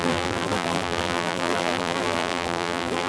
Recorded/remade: remade